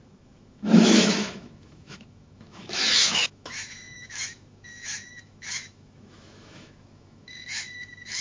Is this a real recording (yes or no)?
no